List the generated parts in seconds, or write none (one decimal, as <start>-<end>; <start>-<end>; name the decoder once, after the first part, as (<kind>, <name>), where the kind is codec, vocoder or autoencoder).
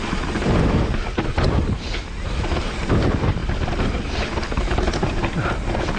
none